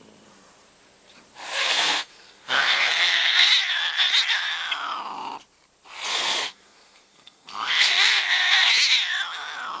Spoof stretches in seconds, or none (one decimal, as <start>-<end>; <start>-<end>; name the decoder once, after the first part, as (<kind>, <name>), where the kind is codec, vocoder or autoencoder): 1.6-3.5 (codec, SNAC); 6.1-8.7